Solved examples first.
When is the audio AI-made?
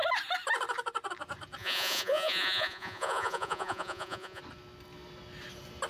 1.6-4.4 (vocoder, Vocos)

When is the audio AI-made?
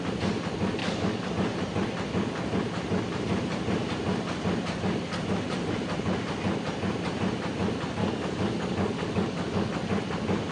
0.8-1.3 (codec, DAC); 8.0-9.7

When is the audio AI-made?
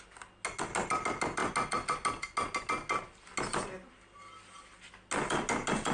none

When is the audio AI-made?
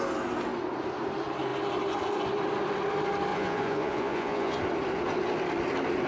3.3-4.6 (vocoder, Vocos)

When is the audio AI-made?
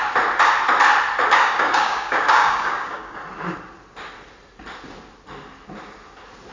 1.3-3.2 (codec, DAC)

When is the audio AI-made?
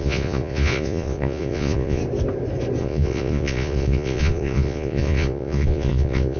0.0-2.0 (vocoder, Vocos); 2.8-6.4